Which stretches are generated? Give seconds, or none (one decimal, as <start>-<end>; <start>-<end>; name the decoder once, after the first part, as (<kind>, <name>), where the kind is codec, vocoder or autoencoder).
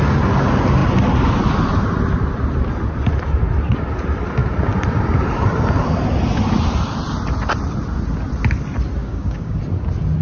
9.0-9.6 (codec, DAC)